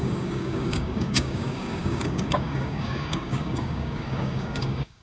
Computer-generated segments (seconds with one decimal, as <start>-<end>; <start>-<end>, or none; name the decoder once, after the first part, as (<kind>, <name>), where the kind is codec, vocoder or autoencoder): 0.0-5.0 (codec, DAC)